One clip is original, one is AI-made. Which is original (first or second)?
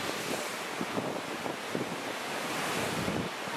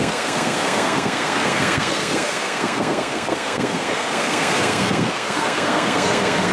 first